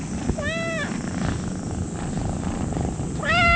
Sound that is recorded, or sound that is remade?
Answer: recorded